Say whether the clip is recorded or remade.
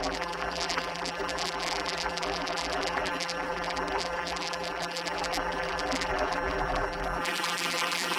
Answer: remade